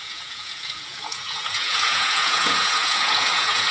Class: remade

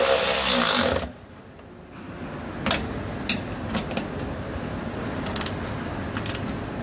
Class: recorded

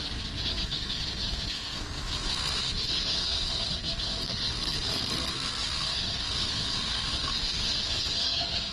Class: remade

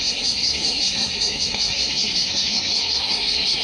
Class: remade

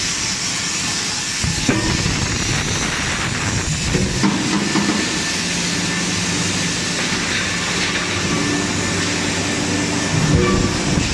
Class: recorded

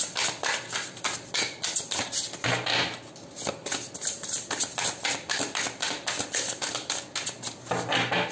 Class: recorded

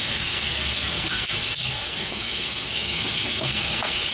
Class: remade